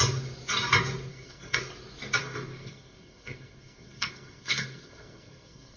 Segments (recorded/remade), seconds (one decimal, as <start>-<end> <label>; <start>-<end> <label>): 0.0-1.1 recorded; 1.1-1.6 remade; 1.6-2.2 recorded; 2.2-5.8 remade